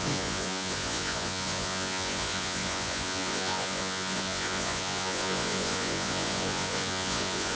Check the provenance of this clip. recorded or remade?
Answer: remade